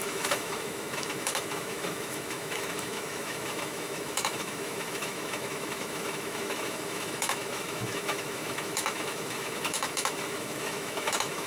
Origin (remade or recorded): remade